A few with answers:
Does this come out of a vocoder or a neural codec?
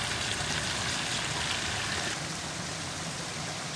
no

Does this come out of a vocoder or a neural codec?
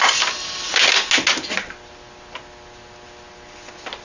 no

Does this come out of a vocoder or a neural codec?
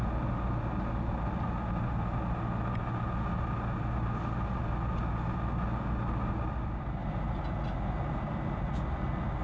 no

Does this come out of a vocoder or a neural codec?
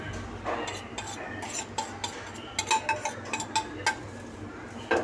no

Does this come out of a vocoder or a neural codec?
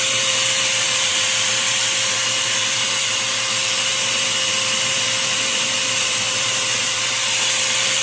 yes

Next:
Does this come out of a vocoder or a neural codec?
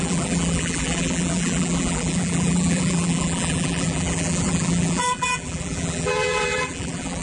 yes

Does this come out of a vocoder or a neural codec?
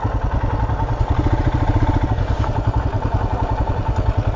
no